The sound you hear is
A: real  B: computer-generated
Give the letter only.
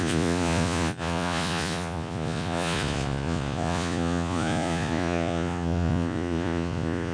B